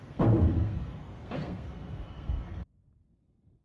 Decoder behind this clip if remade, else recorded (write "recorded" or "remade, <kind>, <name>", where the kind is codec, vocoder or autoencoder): remade, codec, SNAC